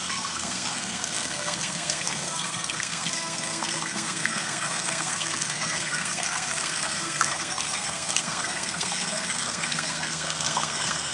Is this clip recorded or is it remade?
remade